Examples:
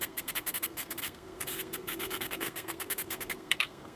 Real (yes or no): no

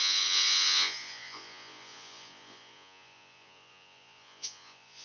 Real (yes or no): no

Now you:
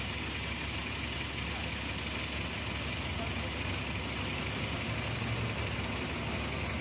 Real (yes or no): yes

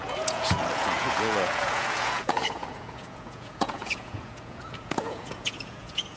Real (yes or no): no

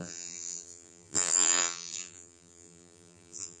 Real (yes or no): no